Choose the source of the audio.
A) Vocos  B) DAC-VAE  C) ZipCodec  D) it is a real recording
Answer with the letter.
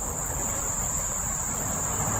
D